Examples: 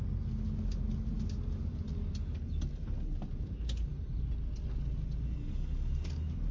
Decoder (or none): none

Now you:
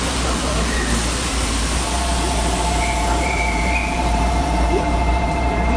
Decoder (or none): vocoder, BigVGAN v2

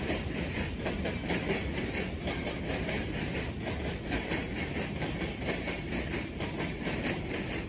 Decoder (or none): vocoder, BigVGAN v2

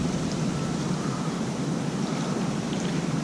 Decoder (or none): vocoder, BigVGAN v2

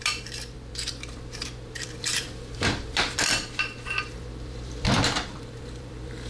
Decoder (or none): vocoder, BigVGAN v2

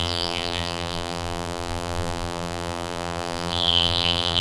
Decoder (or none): vocoder, BigVGAN v2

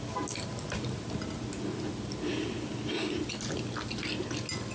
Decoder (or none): none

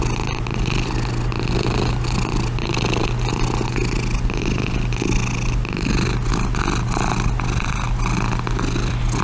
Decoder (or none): none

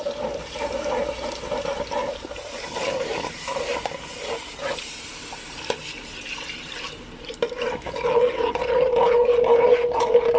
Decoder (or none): vocoder, BigVGAN v2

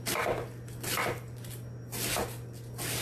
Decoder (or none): none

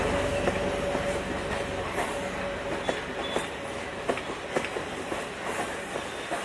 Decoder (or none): none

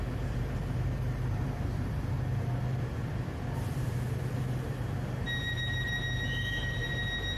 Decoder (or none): vocoder, BigVGAN v2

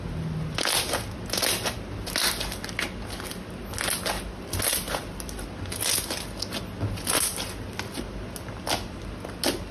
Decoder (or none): none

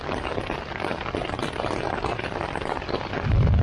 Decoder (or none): none